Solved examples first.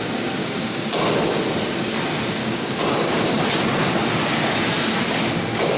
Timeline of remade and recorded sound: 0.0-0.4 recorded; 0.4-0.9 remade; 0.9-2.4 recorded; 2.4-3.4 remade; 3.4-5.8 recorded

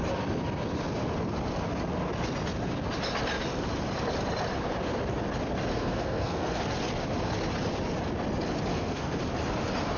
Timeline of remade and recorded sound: 0.0-5.7 recorded; 5.7-6.6 remade; 6.6-8.7 recorded; 8.7-9.2 remade; 9.2-10.0 recorded

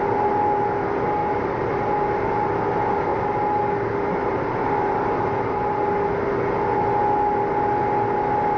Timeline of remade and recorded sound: 0.0-8.6 recorded

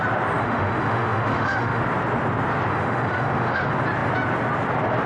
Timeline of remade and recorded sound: 0.0-0.4 recorded; 0.4-1.8 remade; 1.8-2.7 recorded; 2.7-3.6 remade; 3.6-5.1 recorded

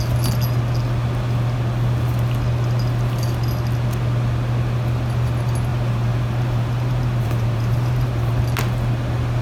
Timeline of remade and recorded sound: 0.0-5.7 recorded; 5.7-8.3 remade; 8.3-9.4 recorded

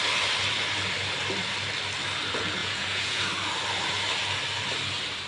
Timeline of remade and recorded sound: 0.0-2.6 recorded; 2.6-3.2 remade; 3.2-5.3 recorded

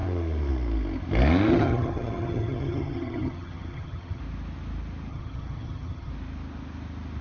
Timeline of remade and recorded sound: 0.0-1.5 recorded; 1.5-4.2 remade; 4.2-5.1 recorded; 5.1-6.1 remade; 6.1-7.2 recorded